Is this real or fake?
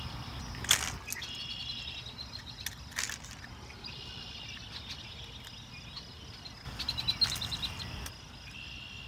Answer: real